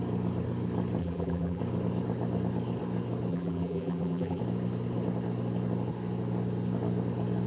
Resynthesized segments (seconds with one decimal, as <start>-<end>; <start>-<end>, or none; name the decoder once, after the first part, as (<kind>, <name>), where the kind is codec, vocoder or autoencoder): 1.0-1.6 (vocoder, BigVGAN v2); 3.3-4.4

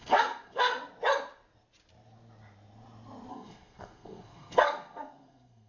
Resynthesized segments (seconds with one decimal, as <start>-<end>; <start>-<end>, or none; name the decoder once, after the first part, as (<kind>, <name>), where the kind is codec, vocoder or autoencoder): 0.0-0.7 (codec, SNAC); 3.3-5.7

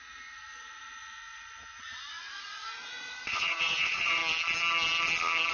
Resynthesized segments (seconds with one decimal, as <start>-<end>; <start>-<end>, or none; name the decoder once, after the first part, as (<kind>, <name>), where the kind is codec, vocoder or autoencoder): 0.0-4.2 (vocoder, Vocos)

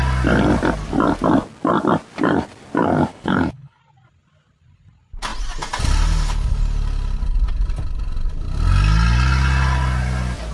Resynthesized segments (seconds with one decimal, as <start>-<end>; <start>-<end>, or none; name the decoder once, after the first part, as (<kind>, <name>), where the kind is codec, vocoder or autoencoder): 3.1-3.8 (codec, HILCodec)

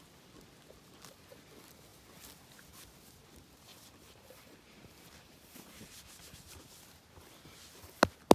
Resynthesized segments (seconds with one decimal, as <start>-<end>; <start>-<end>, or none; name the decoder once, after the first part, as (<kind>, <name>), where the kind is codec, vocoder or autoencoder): 3.7-6.7 (vocoder, BigVGAN v2)